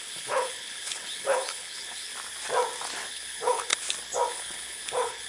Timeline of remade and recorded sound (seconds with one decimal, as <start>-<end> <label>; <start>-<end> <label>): 0.0-2.1 remade; 2.1-3.1 recorded; 3.1-3.7 remade; 3.7-4.3 recorded; 4.3-5.3 remade